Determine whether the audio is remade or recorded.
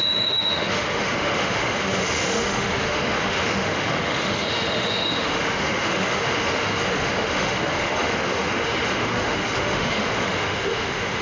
remade